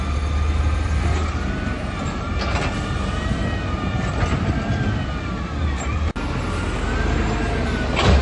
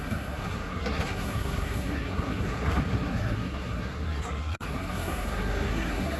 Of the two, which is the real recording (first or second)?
first